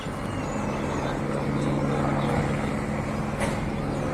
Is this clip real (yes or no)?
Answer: yes